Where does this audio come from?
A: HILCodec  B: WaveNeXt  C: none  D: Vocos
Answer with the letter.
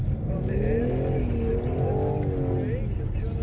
C